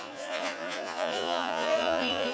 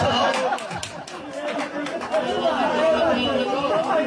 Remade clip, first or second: first